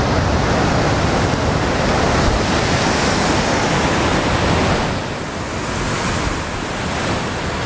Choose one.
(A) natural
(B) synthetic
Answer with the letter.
A